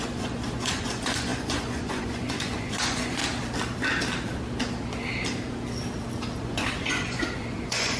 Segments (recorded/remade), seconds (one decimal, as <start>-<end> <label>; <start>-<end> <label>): 0.0-3.2 remade; 3.2-6.4 recorded; 6.4-8.0 remade